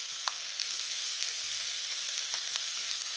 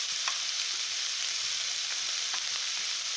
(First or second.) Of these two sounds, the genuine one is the second